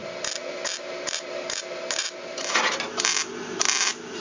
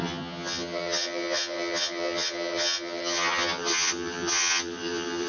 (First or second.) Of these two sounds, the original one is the first